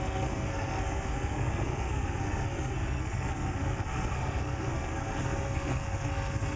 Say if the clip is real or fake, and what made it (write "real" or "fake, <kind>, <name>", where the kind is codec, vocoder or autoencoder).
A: fake, codec, SNAC